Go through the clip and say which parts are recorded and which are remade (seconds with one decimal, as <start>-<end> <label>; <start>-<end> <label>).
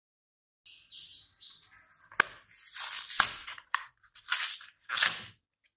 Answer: 0.0-3.4 recorded; 3.4-3.9 remade; 3.9-5.8 recorded